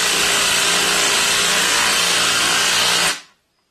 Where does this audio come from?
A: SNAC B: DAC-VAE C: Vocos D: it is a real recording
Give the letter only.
D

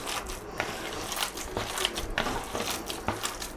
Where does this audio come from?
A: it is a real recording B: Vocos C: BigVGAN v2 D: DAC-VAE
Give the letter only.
A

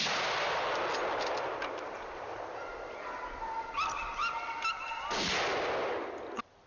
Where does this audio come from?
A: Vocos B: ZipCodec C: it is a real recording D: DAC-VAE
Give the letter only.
C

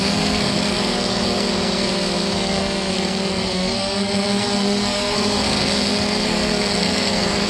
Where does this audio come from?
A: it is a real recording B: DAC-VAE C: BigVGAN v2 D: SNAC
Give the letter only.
D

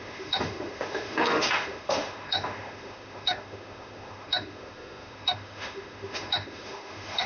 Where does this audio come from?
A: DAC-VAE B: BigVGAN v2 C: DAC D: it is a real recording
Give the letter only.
A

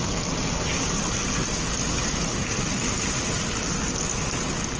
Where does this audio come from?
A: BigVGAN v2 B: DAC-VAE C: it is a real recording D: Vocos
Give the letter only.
C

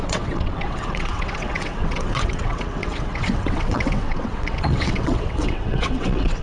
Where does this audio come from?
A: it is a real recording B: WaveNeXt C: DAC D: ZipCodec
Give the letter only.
B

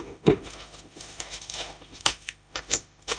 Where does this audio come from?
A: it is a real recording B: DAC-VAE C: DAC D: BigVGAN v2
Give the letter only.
B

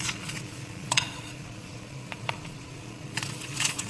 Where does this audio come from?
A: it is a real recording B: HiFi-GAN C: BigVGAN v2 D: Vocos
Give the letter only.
D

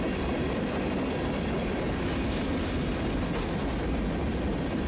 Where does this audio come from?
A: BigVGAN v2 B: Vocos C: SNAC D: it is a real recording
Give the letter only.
D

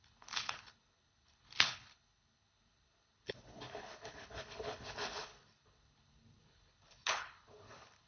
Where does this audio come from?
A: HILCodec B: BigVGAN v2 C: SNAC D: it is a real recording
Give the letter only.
A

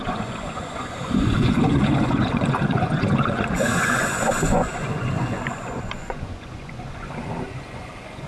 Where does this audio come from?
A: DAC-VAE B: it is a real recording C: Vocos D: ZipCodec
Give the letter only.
C